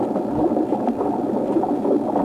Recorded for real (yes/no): yes